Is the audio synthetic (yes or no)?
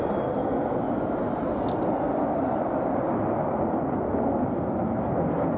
no